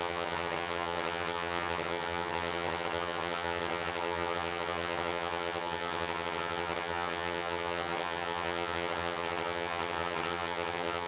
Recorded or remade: remade